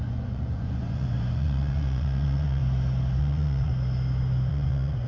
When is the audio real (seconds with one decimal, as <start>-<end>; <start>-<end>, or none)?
2.6-3.2; 3.7-4.5